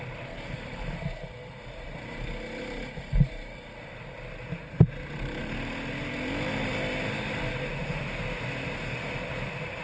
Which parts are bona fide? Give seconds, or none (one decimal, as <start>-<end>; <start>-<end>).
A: 0.0-9.8